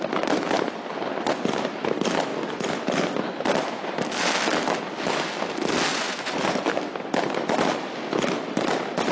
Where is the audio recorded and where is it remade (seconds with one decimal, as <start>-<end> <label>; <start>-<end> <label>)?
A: 0.0-5.9 recorded; 5.9-6.6 remade; 6.6-9.1 recorded